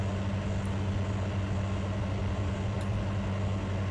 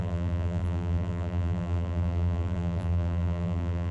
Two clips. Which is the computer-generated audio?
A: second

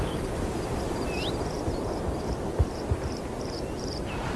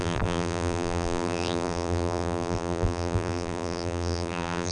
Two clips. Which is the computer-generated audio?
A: second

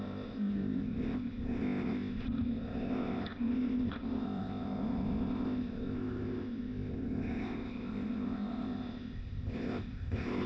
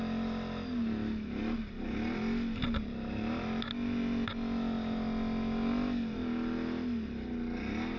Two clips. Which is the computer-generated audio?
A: first